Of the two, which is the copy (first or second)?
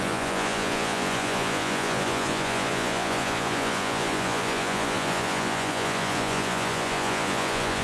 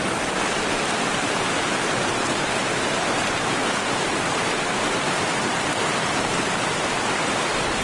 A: first